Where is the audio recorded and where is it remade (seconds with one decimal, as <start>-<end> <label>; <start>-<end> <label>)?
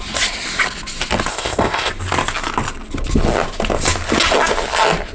0.0-1.3 recorded; 1.3-1.9 remade; 1.9-5.1 recorded